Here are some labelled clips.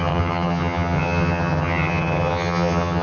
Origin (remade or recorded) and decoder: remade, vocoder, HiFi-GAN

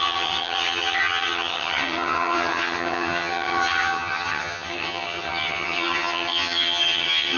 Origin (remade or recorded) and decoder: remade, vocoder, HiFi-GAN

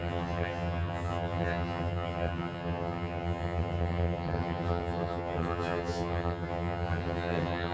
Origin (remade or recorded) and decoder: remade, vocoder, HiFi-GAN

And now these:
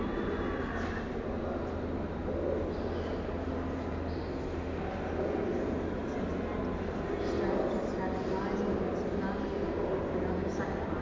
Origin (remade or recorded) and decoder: recorded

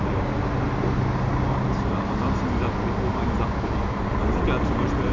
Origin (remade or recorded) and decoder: recorded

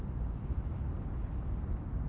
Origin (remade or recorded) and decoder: recorded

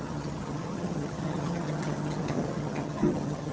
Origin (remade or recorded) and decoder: remade, vocoder, HiFi-GAN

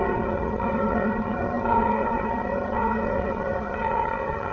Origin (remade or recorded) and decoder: remade, vocoder, HiFi-GAN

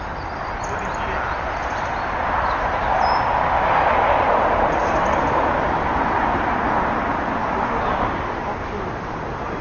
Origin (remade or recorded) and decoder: recorded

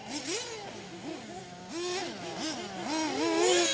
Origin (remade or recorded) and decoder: recorded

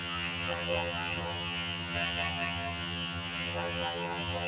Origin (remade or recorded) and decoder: remade, vocoder, HiFi-GAN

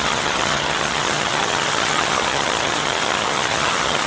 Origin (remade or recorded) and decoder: remade, vocoder, HiFi-GAN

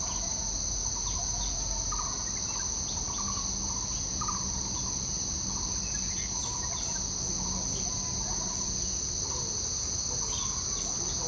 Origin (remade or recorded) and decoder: recorded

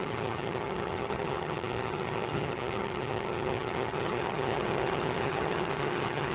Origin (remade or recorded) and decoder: remade, vocoder, HiFi-GAN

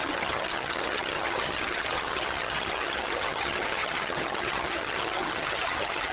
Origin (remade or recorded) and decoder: remade, vocoder, HiFi-GAN